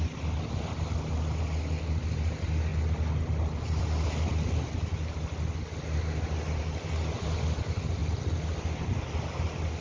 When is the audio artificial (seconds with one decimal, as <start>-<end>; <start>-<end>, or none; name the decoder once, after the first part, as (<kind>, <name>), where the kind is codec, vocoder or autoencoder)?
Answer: none